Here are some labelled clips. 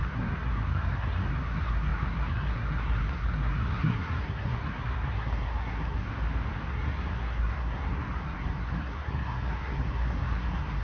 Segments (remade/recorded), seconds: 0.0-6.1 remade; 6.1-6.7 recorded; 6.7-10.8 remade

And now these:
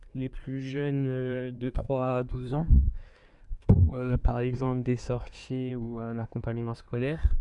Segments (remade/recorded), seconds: 0.0-7.4 remade

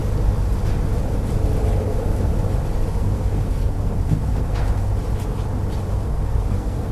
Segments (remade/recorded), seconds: 0.0-1.8 recorded; 1.8-2.3 remade; 2.3-2.9 recorded; 2.9-4.9 remade; 4.9-5.9 recorded; 5.9-6.9 remade

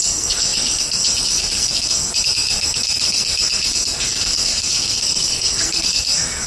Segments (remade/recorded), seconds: 0.0-6.5 remade

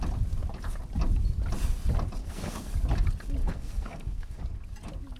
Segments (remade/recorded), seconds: 0.0-2.2 recorded; 2.2-2.7 remade; 2.7-3.4 recorded; 3.4-4.4 remade; 4.4-5.2 recorded

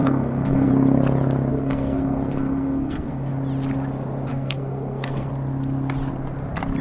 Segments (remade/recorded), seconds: 0.0-0.7 remade; 0.7-1.5 recorded; 1.5-3.3 remade; 3.3-4.3 recorded; 4.3-5.3 remade; 5.3-6.8 recorded